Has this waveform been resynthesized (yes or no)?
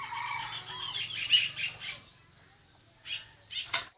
no